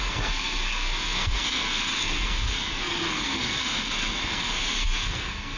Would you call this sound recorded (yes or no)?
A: no